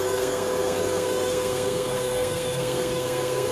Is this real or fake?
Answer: fake